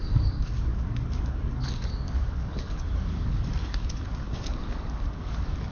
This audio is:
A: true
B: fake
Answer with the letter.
B